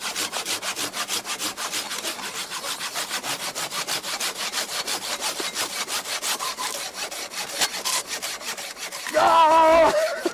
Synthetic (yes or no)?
no